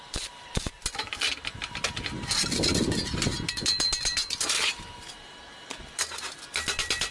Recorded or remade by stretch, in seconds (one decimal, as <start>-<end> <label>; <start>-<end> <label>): 0.0-7.1 recorded